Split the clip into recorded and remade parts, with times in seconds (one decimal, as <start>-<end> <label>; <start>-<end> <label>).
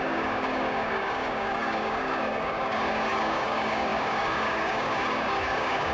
0.0-5.9 remade